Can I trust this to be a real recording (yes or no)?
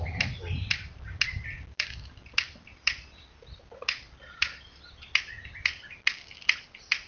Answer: yes